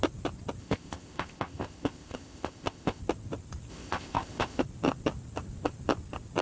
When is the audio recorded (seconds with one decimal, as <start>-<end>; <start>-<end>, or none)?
0.0-0.6; 3.0-3.7; 4.6-6.4